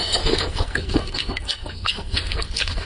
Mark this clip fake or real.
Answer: fake